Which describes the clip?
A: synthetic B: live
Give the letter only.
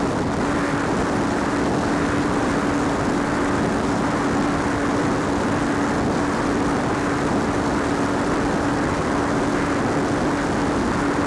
B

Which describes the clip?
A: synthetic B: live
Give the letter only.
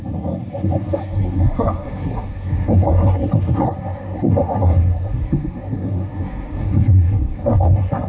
A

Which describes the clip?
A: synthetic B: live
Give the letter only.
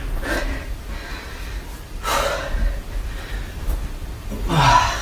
A